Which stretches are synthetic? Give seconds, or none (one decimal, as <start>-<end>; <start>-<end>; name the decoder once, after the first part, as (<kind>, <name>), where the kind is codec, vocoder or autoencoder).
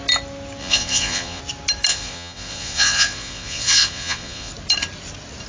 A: 0.6-1.4 (vocoder, Vocos); 1.9-4.5